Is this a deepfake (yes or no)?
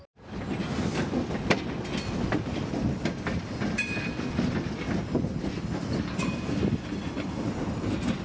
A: no